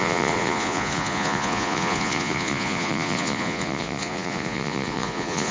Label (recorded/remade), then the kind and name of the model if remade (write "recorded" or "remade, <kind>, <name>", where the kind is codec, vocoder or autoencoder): remade, vocoder, Vocos